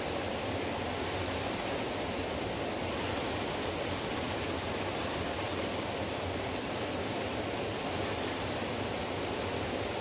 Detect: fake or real real